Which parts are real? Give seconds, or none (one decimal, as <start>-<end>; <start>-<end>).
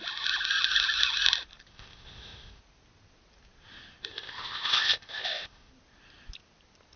0.0-1.7; 2.6-4.1; 5.7-7.0